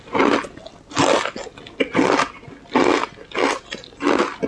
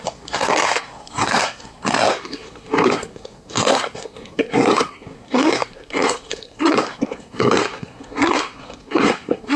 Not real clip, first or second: second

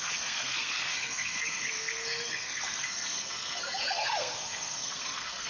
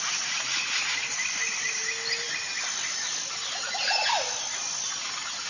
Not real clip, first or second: first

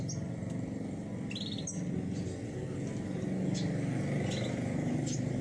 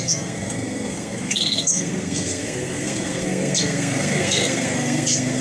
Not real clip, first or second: second